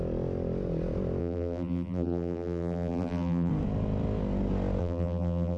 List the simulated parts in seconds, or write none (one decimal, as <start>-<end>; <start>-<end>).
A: 1.2-3.5; 4.8-5.6